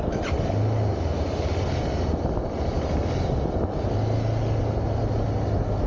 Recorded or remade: recorded